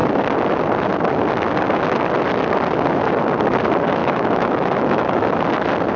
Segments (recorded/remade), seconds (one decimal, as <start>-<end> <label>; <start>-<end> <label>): 0.0-4.0 recorded; 4.0-5.4 remade; 5.4-6.0 recorded